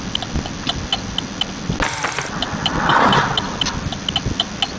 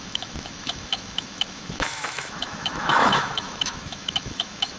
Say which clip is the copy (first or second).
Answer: second